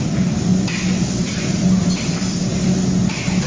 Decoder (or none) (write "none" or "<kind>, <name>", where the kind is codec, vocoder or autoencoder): none